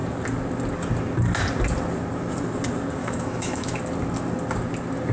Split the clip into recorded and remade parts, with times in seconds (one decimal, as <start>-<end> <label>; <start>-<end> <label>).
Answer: 0.0-3.0 recorded; 3.0-3.8 remade; 3.8-5.1 recorded